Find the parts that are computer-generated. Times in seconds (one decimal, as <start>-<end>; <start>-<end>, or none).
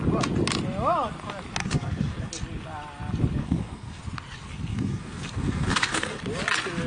1.6-2.3; 3.4-4.0; 4.7-6.2